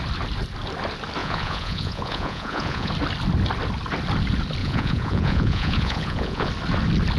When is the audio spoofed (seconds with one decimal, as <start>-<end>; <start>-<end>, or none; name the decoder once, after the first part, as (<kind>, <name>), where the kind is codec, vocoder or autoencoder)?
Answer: 1.2-2.9 (vocoder, Vocos); 4.6-6.5